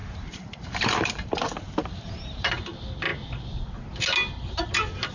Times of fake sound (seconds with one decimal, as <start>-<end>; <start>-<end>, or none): 0.0-2.5